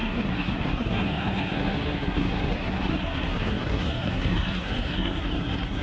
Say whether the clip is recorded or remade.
remade